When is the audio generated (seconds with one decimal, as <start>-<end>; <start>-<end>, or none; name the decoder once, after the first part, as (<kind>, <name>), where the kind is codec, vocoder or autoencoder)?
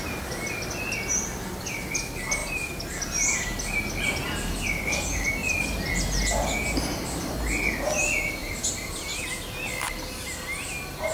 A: 2.4-3.0 (vocoder, BigVGAN v2); 8.4-9.3